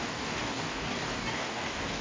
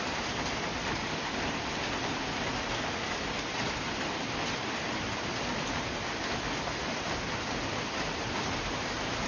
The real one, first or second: second